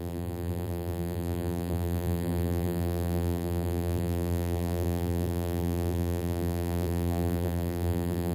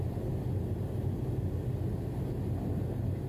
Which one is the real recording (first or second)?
second